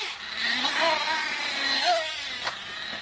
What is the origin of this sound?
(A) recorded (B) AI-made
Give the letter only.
A